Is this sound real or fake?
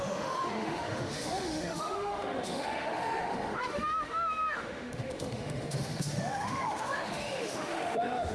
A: fake